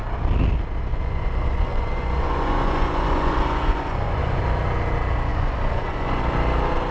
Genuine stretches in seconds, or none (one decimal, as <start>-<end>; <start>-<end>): 0.0-0.9; 4.4-5.3; 6.2-6.9